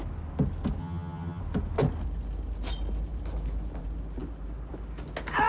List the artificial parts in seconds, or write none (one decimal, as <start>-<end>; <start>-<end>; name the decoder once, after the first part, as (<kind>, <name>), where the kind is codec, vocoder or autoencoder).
0.8-1.4 (vocoder, HiFi-GAN)

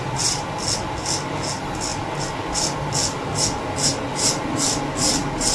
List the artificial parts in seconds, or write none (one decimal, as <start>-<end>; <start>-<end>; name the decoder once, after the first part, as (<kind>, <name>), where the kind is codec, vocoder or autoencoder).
none

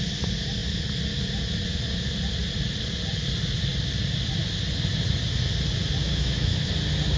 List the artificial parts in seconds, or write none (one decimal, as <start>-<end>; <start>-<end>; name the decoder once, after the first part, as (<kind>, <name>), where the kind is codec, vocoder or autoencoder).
6.0-6.7 (autoencoder, DAC-VAE)